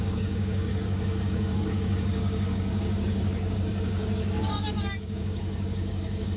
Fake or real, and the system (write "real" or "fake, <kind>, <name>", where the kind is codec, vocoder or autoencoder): fake, codec, DAC